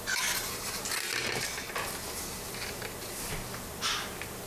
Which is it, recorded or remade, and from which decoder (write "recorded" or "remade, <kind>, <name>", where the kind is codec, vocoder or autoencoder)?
recorded